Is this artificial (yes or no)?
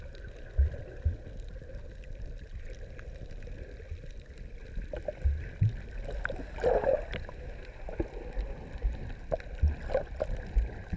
no